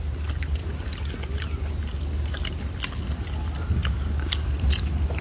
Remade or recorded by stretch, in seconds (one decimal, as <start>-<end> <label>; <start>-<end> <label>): 0.0-5.2 recorded